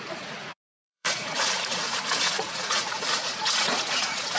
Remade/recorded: remade